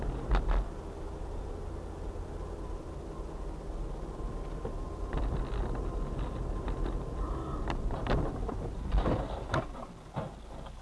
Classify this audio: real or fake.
real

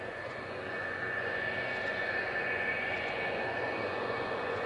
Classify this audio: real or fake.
fake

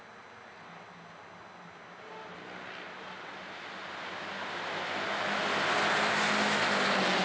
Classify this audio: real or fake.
real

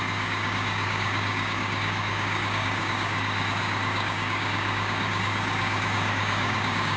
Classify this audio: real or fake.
fake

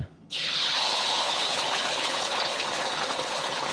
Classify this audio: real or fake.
fake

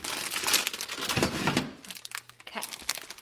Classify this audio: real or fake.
real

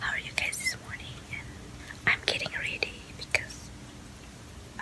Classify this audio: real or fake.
real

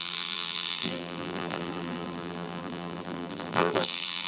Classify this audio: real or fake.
fake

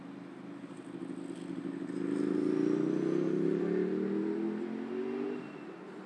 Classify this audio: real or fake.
real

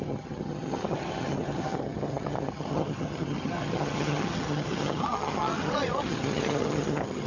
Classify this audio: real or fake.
fake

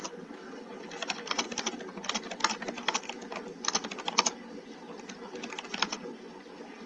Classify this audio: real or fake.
real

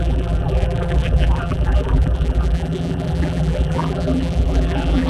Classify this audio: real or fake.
fake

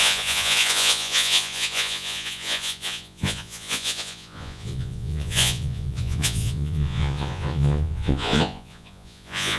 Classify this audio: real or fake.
fake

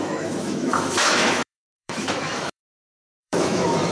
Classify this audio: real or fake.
fake